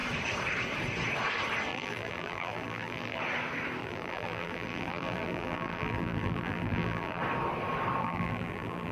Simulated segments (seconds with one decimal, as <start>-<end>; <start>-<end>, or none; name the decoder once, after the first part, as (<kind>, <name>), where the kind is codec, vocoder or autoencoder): 1.7-3.2 (vocoder, BigVGAN v2); 3.8-7.2; 8.0-8.9